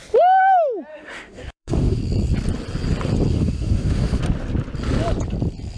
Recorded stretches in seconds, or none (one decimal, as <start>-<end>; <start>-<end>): 0.0-0.9; 2.0-3.3; 4.2-5.8